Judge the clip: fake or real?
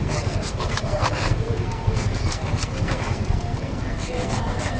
fake